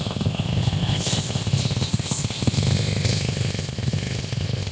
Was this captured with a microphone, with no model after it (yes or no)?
no